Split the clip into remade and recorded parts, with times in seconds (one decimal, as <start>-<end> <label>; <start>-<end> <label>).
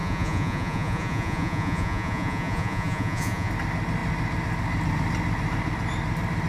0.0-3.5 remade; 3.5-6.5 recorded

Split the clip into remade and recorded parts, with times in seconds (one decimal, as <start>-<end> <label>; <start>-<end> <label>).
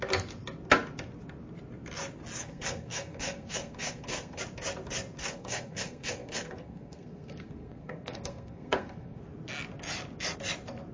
0.0-2.4 recorded; 2.4-4.4 remade; 4.4-5.2 recorded; 5.2-9.2 remade; 9.2-10.9 recorded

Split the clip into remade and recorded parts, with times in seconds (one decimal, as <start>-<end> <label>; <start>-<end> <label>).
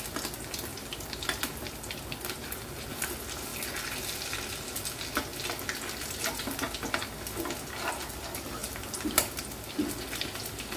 0.0-8.6 recorded; 8.6-9.4 remade; 9.4-10.8 recorded